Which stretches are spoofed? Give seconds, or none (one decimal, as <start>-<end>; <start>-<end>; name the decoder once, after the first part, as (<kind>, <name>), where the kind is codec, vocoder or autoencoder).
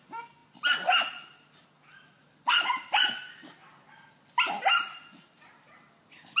none